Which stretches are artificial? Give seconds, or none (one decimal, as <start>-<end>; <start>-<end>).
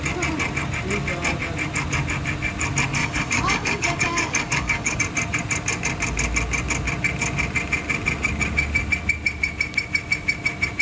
3.0-5.0